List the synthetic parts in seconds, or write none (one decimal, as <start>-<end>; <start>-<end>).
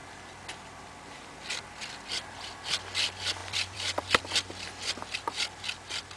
3.4-4.2